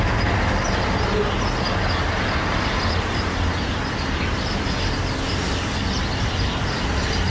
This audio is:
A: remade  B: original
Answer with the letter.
B